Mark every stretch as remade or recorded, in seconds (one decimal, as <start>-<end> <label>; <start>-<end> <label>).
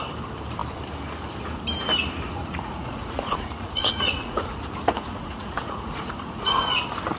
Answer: 0.0-2.3 recorded; 2.3-6.6 remade; 6.6-7.2 recorded